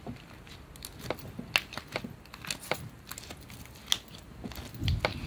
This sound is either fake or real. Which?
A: real